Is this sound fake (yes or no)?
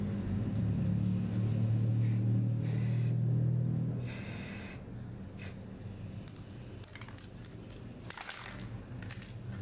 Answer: no